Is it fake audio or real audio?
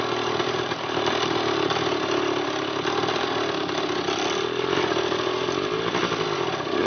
real